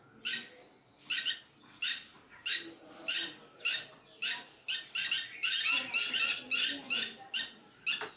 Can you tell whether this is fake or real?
real